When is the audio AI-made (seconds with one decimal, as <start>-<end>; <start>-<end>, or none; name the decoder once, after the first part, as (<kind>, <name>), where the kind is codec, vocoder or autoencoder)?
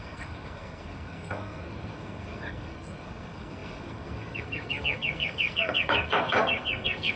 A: 0.0-7.2 (codec, SNAC)